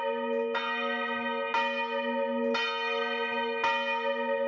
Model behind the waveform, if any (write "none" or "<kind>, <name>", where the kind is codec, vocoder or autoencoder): none